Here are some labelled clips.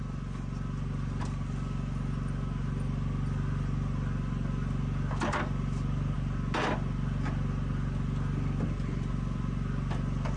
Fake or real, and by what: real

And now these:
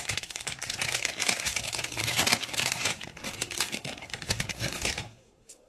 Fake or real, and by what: fake, codec, SNAC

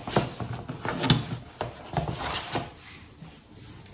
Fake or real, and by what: real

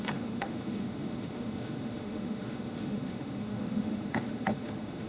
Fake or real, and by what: fake, autoencoder, DAC-VAE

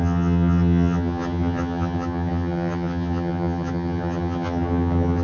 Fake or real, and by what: fake, vocoder, HiFi-GAN